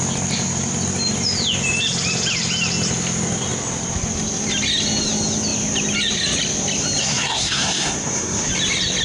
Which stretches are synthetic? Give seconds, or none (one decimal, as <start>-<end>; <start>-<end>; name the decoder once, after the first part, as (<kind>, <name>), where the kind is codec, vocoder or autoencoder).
7.0-8.5 (codec, SNAC)

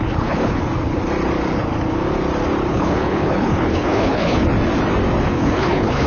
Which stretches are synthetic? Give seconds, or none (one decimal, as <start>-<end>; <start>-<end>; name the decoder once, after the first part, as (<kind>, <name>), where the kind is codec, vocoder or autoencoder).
0.0-0.6 (codec, HILCodec); 2.7-4.5; 5.2-6.1

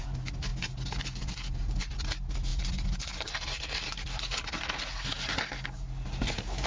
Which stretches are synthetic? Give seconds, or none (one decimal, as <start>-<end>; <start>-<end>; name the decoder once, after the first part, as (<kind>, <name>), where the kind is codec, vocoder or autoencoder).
none

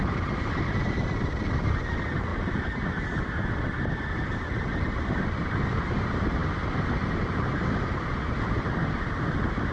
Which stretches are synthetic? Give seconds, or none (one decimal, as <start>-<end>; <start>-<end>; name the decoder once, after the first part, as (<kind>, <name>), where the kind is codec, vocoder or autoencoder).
none

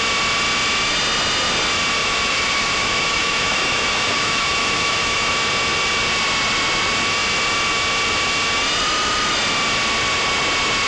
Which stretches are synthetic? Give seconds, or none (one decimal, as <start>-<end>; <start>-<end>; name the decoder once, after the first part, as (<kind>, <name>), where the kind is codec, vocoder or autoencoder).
2.0-5.3 (autoencoder, DAC-VAE)